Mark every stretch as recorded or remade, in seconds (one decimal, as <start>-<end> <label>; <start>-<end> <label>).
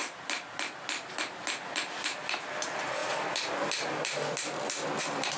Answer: 0.0-5.4 remade